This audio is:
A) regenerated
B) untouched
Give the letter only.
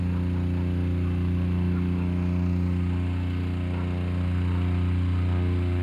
B